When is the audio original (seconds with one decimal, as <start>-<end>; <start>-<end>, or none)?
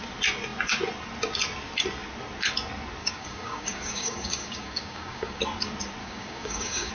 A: 0.0-3.0; 5.4-6.0